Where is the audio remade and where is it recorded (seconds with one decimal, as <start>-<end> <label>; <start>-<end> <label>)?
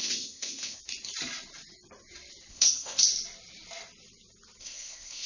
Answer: 0.0-0.8 remade; 0.8-2.5 recorded; 2.5-3.0 remade; 3.0-4.6 recorded; 4.6-5.3 remade